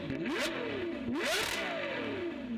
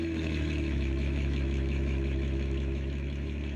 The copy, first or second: second